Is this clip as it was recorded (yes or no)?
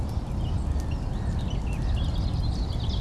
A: yes